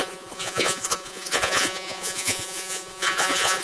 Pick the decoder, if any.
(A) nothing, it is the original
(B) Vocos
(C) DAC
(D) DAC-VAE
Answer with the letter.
B